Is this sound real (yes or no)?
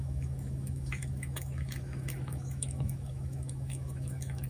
no